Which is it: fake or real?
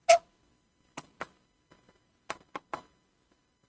real